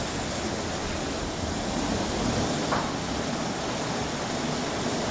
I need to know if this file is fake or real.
real